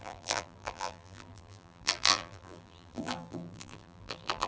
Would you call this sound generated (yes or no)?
yes